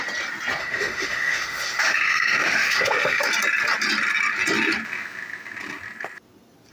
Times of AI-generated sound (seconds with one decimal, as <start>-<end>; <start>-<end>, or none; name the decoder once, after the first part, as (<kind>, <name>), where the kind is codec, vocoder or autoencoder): 0.6-3.3 (autoencoder, DAC-VAE)